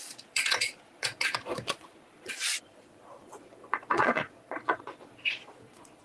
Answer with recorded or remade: remade